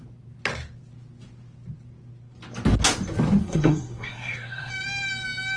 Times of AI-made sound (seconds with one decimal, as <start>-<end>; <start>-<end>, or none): 3.4-4.7